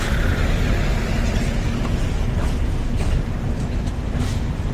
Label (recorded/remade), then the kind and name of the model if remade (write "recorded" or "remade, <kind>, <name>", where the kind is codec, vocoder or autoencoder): recorded